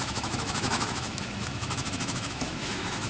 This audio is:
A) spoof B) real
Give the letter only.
A